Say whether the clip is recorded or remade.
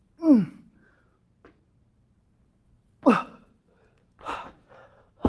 remade